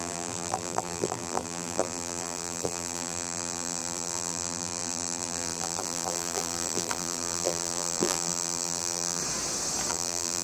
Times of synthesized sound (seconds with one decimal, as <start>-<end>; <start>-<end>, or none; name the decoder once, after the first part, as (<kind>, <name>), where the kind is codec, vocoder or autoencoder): 0.0-9.2 (vocoder, BigVGAN v2); 9.9-10.4

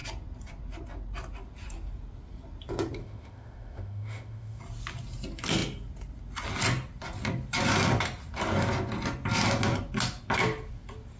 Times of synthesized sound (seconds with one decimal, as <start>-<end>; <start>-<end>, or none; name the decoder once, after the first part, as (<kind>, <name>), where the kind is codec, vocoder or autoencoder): 3.0-4.6 (autoencoder, DAC-VAE)

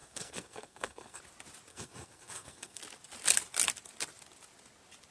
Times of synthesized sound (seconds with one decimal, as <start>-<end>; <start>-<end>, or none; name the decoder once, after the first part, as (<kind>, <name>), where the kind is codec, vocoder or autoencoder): 0.0-1.2 (codec, SNAC); 1.7-2.8

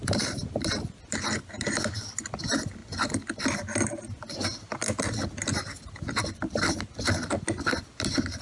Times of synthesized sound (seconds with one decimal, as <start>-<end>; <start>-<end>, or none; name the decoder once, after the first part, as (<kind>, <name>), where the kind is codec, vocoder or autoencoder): none

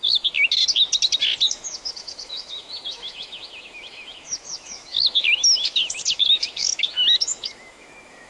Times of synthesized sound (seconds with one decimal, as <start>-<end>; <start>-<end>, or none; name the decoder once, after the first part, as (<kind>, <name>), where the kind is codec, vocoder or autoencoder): 0.0-0.6 (autoencoder, DAC-VAE); 1.5-8.3

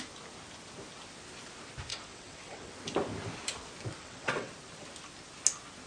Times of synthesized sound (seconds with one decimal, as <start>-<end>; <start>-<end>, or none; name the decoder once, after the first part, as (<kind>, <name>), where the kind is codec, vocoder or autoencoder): 1.9-2.7 (vocoder, WaveNeXt); 4.0-4.5